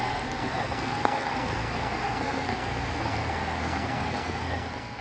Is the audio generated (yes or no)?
yes